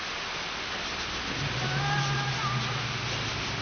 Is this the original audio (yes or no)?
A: yes